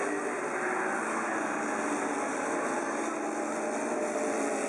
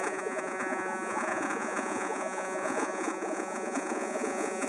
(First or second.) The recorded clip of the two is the first